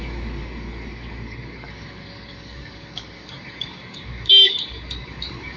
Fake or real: fake